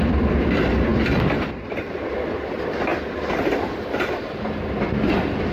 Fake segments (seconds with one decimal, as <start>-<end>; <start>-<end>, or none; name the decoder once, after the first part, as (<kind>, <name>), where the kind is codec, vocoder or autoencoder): 0.0-5.5 (vocoder, BigVGAN v2)

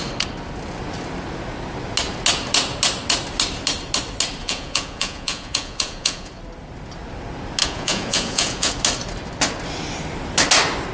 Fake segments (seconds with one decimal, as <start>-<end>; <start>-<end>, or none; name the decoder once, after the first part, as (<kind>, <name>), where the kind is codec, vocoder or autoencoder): 4.4-6.4 (vocoder, Vocos); 7.6-8.7

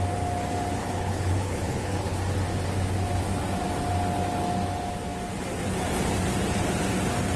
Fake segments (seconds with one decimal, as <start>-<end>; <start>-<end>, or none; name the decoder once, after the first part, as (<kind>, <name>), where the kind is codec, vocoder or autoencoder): 0.8-2.2 (codec, HILCodec)

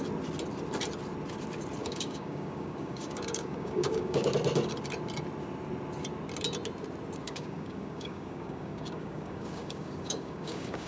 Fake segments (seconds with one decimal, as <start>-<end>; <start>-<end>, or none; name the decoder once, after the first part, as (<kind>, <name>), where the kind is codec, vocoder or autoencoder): 1.8-4.3 (codec, DAC); 7.2-10.9

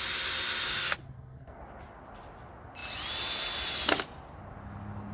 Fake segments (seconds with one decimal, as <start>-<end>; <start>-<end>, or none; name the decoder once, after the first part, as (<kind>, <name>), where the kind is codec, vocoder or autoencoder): 1.0-1.6 (codec, SNAC)

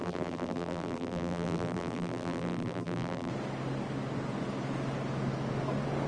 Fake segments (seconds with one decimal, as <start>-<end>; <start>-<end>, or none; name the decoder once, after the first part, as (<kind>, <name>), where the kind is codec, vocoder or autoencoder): 0.0-3.3 (vocoder, BigVGAN v2)